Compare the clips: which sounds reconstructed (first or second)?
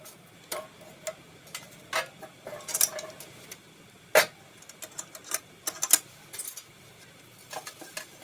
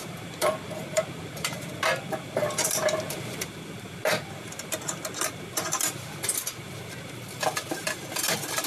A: second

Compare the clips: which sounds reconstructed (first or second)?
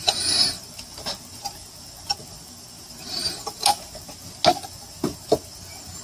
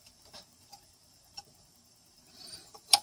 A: second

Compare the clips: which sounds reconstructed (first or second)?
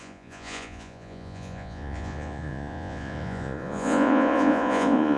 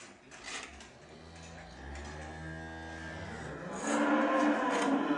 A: first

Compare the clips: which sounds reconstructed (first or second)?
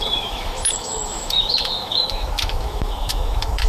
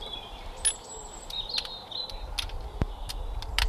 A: first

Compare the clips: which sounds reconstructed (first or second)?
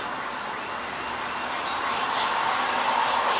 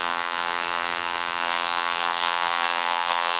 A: second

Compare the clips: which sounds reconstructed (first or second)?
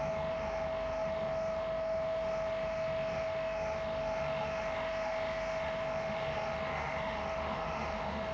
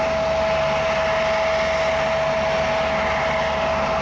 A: first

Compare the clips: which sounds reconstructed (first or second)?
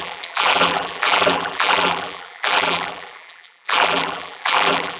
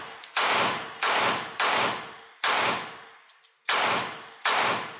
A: first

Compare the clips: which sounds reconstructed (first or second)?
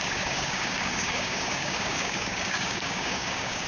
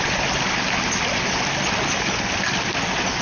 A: first